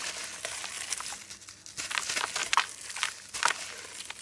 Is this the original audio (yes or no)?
yes